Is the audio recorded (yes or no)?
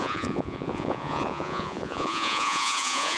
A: no